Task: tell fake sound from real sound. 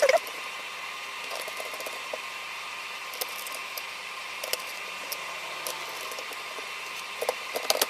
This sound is real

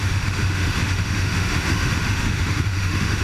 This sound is fake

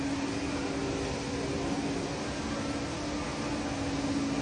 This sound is real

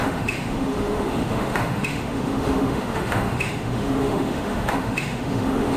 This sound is fake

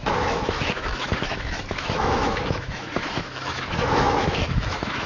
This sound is fake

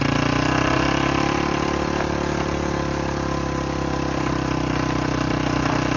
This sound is real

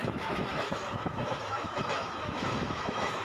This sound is fake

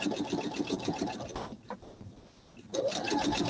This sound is real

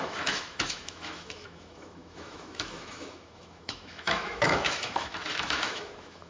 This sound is fake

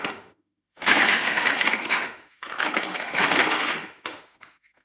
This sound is fake